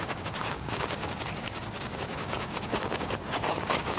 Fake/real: fake